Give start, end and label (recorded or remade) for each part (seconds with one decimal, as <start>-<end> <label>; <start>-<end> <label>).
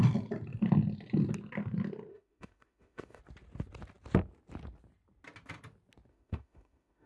0.0-2.1 recorded; 2.1-3.2 remade; 3.2-6.1 recorded; 6.1-7.1 remade